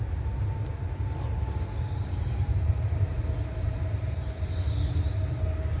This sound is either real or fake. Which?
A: real